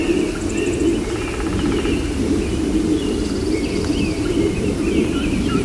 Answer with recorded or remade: recorded